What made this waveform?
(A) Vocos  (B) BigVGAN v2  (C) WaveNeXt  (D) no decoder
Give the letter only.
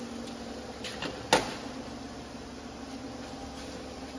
D